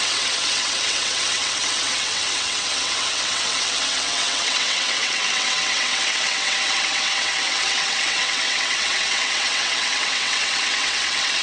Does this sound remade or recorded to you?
remade